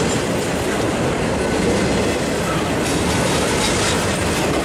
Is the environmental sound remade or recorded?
recorded